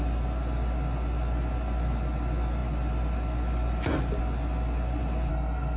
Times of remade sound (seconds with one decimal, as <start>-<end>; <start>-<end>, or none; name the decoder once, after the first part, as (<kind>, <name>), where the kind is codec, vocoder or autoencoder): 5.3-5.8 (codec, SNAC)

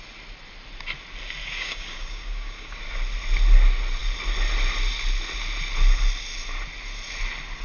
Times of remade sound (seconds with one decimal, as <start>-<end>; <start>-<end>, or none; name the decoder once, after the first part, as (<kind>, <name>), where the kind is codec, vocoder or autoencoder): 1.4-2.8 (codec, DAC)